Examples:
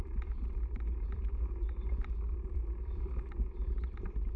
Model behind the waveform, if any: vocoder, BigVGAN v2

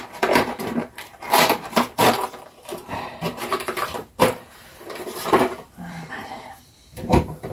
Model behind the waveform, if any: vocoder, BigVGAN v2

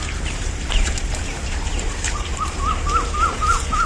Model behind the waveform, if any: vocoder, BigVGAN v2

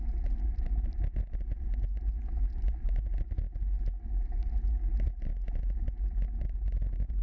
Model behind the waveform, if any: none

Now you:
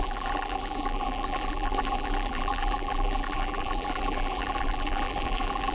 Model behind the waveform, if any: vocoder, BigVGAN v2